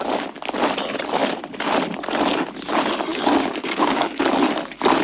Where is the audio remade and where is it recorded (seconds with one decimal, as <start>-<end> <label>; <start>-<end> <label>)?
0.0-3.1 recorded; 3.1-4.2 remade; 4.2-5.0 recorded